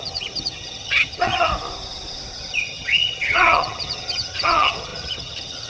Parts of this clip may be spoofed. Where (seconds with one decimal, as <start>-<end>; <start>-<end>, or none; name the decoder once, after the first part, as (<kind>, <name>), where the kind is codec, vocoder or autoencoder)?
0.0-1.5 (vocoder, HiFi-GAN); 2.5-5.7

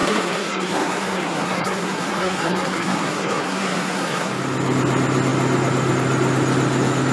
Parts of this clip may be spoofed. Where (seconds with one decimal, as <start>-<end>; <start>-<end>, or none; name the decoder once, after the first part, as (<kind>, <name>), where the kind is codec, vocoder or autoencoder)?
0.0-4.3 (codec, SNAC)

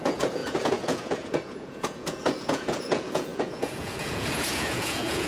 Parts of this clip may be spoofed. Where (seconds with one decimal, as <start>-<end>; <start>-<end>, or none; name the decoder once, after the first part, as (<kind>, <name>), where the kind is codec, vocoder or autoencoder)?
0.0-5.3 (vocoder, Vocos)

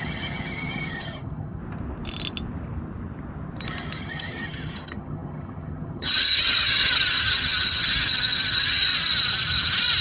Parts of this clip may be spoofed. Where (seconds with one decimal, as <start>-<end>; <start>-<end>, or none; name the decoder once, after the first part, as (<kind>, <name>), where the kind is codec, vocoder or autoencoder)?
0.0-1.6 (vocoder, HiFi-GAN); 4.0-8.9

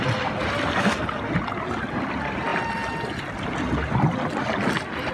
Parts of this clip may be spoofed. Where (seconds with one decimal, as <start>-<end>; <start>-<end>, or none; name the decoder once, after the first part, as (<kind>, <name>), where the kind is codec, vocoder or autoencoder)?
none